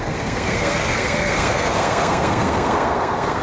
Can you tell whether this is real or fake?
fake